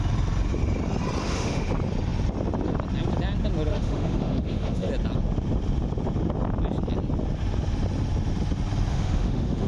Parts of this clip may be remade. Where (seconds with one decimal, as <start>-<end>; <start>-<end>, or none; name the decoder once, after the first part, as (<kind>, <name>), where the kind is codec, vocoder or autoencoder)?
1.2-1.7 (autoencoder, DAC-VAE); 3.7-4.9; 8.9-9.7